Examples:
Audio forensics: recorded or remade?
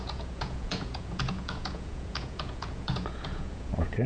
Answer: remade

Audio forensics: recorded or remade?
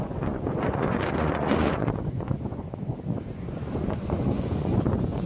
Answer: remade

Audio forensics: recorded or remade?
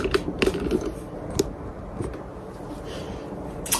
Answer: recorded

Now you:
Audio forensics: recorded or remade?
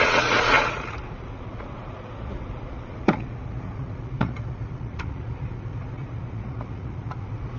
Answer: remade